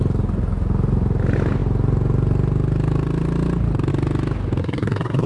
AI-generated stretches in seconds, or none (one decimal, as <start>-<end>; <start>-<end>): 4.6-5.3